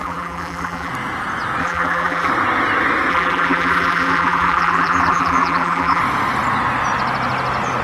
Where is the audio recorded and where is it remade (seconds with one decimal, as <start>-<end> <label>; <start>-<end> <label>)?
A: 0.0-0.9 remade; 0.9-1.6 recorded; 1.6-2.3 remade; 2.3-3.1 recorded; 3.1-6.0 remade; 6.0-7.8 recorded